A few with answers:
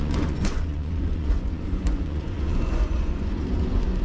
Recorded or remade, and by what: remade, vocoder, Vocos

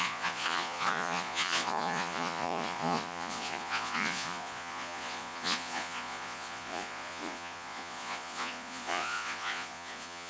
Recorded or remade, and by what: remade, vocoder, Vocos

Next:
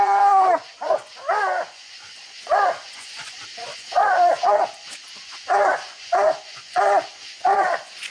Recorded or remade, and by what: remade, vocoder, Vocos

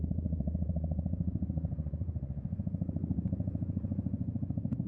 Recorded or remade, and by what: remade, vocoder, Vocos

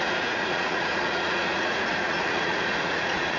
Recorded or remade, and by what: remade, vocoder, Vocos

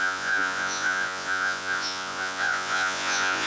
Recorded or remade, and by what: remade, vocoder, Vocos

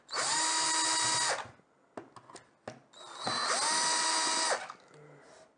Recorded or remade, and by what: recorded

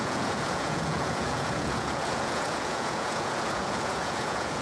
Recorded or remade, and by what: remade, vocoder, Vocos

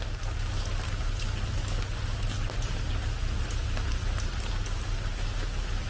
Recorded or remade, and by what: recorded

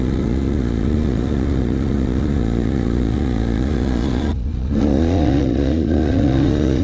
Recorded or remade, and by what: remade, vocoder, Vocos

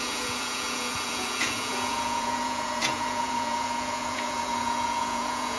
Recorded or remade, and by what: remade, vocoder, Vocos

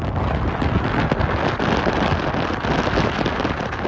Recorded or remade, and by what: recorded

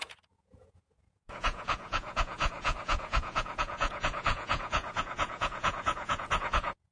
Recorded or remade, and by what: remade, vocoder, Vocos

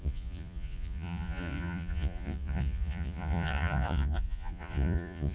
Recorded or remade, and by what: remade, vocoder, Vocos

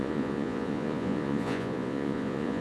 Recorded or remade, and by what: remade, vocoder, Vocos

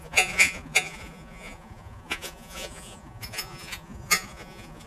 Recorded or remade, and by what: remade, vocoder, Vocos